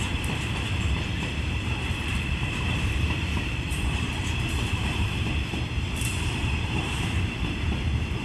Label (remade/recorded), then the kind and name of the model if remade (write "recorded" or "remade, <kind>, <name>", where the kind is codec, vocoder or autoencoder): remade, vocoder, BigVGAN v2